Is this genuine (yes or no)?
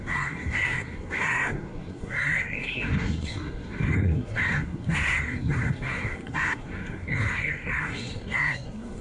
no